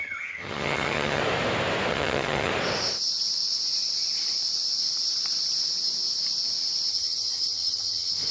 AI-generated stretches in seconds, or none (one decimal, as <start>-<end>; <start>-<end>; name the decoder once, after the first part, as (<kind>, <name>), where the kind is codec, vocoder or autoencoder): 0.0-1.2 (vocoder, HiFi-GAN); 1.9-2.5; 6.9-8.3